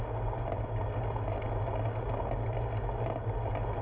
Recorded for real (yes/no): yes